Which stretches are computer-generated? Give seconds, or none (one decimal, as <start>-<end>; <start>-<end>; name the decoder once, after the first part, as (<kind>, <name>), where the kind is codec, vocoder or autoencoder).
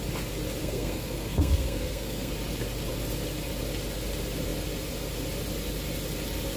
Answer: 0.6-2.3 (codec, SNAC)